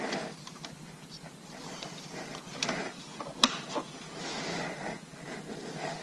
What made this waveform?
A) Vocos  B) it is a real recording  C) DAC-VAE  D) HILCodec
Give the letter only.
B